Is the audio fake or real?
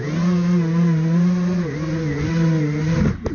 real